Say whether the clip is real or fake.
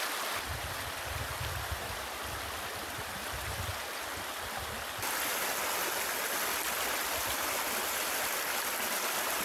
real